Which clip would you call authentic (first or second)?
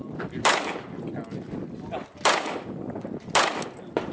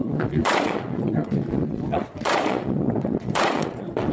first